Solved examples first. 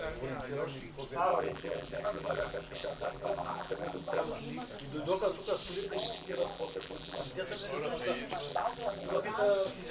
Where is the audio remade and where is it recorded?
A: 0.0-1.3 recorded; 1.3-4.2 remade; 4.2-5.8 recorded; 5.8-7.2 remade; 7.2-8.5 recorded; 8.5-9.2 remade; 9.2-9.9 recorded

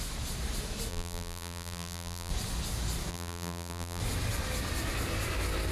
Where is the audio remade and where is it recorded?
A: 0.0-0.9 recorded; 0.9-2.3 remade; 2.3-3.1 recorded; 3.1-4.0 remade; 4.0-5.7 recorded

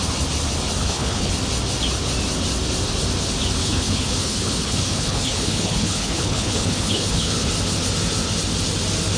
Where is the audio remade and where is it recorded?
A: 0.0-0.8 recorded; 0.8-1.3 remade; 1.3-3.6 recorded; 3.6-7.5 remade; 7.5-9.2 recorded

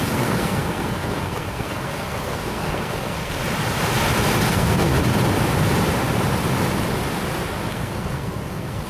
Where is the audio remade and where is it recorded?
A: 0.0-3.4 remade; 3.4-4.5 recorded; 4.5-4.9 remade; 4.9-7.7 recorded; 7.7-8.9 remade

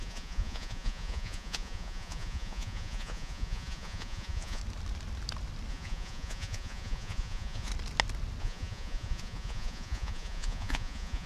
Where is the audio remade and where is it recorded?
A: 0.0-4.6 remade; 4.6-5.7 recorded; 5.7-7.7 remade; 7.7-8.4 recorded; 8.4-11.3 remade

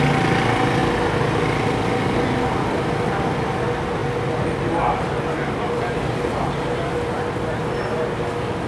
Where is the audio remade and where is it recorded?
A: 0.0-8.7 recorded

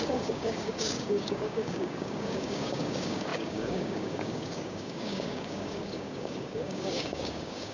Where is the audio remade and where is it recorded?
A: 0.0-7.7 remade

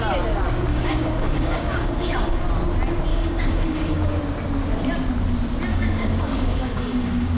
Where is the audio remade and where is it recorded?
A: 0.0-0.7 recorded; 0.7-2.4 remade; 2.4-3.1 recorded; 3.1-4.2 remade; 4.2-5.7 recorded; 5.7-7.4 remade